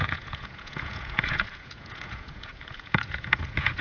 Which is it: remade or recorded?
remade